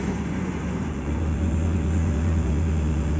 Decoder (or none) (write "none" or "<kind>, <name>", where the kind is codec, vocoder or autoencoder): vocoder, Vocos